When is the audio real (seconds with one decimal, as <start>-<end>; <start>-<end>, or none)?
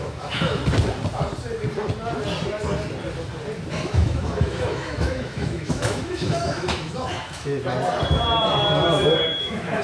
0.6-3.7; 7.5-9.4